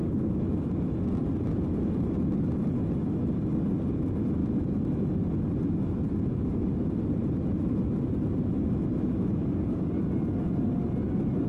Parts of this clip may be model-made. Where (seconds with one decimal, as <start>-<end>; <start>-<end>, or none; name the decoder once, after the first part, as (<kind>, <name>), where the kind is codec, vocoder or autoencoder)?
none